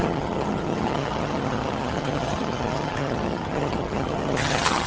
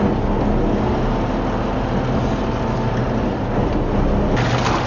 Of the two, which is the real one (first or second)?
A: second